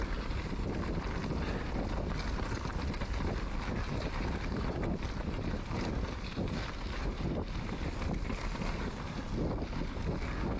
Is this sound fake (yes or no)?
no